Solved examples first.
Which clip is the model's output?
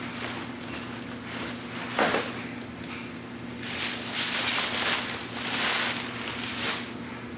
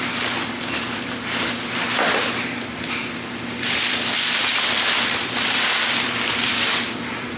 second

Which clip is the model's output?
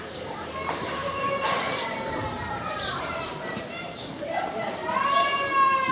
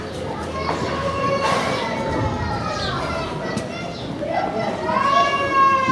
first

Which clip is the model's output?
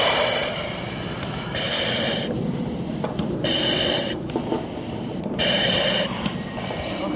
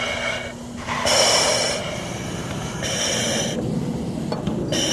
first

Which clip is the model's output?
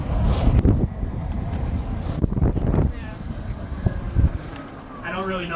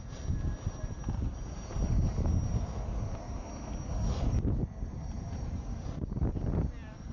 first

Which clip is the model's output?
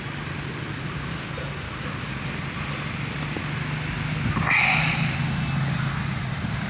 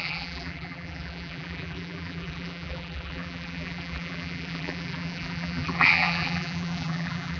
second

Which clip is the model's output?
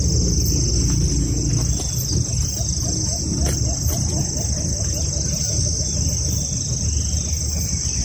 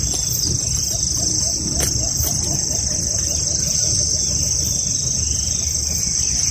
second